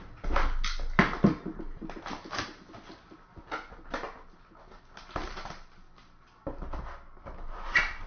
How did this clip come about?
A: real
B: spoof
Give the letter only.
A